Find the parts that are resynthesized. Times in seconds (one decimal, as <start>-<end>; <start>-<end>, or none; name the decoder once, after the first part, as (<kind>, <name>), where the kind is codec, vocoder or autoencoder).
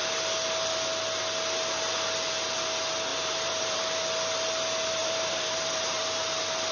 3.1-3.8 (vocoder, BigVGAN v2); 5.0-6.0